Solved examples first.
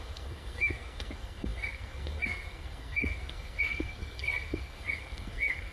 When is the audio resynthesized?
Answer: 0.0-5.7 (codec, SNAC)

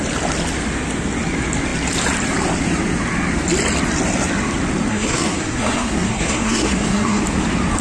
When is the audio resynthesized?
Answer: 4.9-7.2 (codec, SNAC)